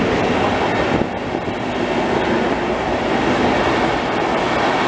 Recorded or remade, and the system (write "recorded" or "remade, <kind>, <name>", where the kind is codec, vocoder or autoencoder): recorded